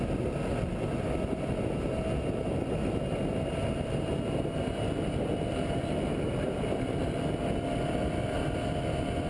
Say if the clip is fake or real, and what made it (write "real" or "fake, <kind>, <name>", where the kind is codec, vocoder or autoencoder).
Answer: real